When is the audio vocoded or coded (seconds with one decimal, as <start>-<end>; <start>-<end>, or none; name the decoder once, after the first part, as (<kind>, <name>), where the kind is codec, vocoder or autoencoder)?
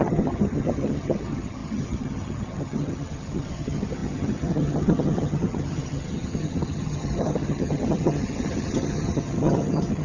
0.0-10.0 (vocoder, HiFi-GAN)